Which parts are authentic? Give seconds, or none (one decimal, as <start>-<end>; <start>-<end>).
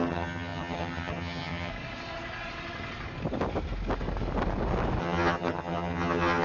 1.7-5.0